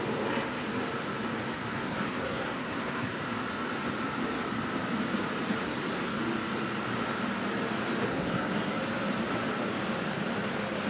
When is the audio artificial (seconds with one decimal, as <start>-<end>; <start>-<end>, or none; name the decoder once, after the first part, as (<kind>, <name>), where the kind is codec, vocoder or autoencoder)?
1.7-3.2 (codec, SNAC); 5.6-6.2; 8.1-8.8